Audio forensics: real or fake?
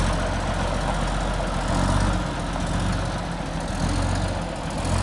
real